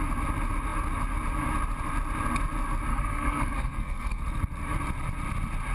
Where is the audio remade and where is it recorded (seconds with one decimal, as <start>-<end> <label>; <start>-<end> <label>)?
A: 0.0-2.9 recorded; 2.9-4.2 remade; 4.2-5.7 recorded